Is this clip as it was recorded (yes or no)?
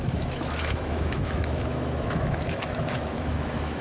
no